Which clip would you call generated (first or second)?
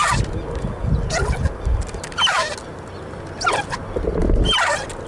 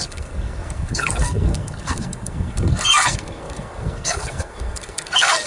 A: second